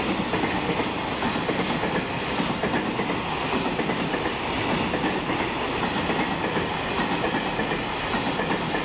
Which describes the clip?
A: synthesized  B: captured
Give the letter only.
B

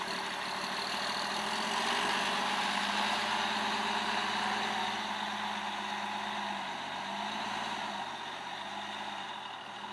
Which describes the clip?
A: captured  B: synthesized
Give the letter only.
A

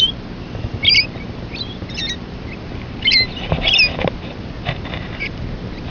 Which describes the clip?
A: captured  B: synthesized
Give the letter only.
A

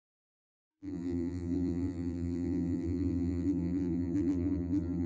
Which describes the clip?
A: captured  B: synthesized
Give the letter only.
B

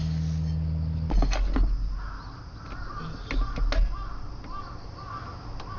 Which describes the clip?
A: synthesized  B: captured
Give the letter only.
B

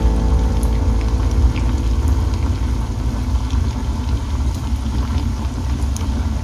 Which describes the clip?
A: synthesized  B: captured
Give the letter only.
B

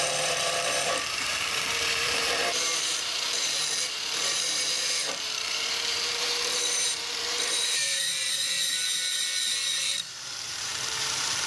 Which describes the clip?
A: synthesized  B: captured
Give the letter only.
A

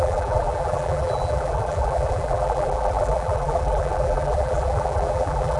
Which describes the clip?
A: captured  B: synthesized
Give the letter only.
B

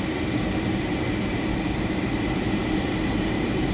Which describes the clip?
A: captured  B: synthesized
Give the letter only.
B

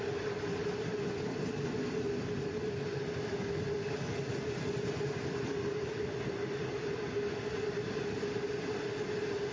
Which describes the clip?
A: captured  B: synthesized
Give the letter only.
A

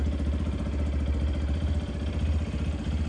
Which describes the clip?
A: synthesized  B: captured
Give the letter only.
B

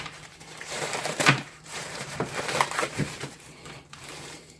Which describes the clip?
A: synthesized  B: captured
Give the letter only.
A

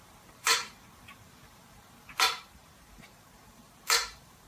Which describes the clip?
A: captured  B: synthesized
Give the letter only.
B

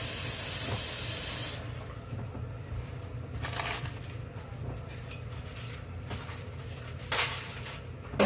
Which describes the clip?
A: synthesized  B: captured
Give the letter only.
B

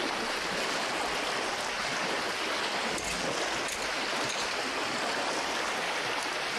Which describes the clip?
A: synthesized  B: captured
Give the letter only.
B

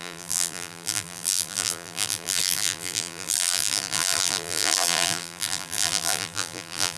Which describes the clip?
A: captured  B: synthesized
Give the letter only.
B